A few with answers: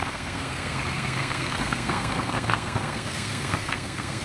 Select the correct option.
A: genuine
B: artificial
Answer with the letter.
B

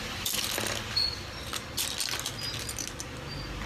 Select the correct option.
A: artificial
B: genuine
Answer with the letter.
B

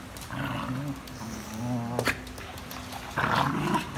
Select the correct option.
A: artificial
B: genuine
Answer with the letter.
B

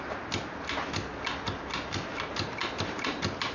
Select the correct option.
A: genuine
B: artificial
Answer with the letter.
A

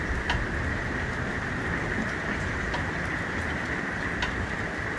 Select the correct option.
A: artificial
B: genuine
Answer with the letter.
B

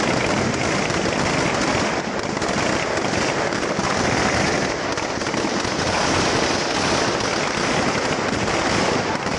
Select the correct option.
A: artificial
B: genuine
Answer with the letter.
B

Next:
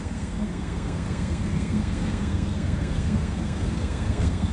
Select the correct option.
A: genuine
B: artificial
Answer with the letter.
B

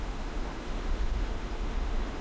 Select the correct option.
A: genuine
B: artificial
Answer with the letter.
B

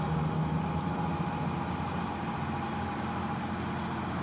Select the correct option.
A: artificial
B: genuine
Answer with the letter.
B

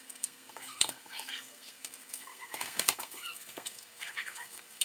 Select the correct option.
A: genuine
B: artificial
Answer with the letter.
B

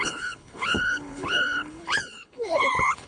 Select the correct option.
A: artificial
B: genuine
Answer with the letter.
A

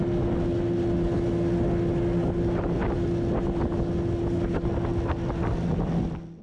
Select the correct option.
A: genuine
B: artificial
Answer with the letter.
A